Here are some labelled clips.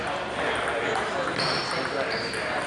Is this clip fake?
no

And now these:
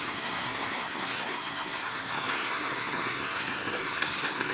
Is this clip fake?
yes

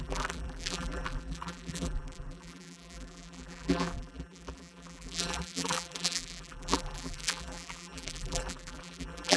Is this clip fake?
yes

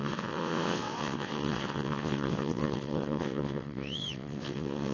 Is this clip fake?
yes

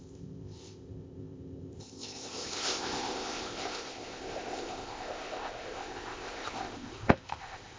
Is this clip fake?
yes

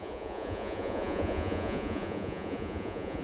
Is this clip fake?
yes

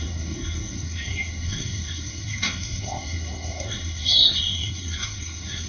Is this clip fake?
yes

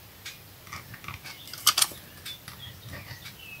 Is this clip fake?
no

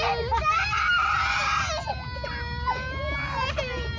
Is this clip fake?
no